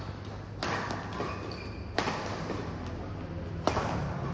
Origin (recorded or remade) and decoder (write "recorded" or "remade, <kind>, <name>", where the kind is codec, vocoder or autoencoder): recorded